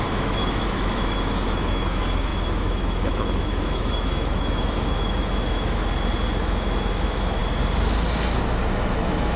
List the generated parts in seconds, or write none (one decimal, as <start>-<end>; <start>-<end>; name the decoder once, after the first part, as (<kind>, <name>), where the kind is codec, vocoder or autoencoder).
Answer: 0.0-5.8 (autoencoder, DAC-VAE); 6.4-7.4; 8.7-9.4